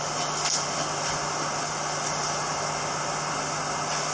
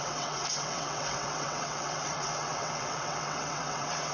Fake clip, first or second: second